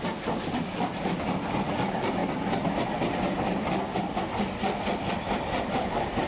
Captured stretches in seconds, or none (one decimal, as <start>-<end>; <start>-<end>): 2.2-5.6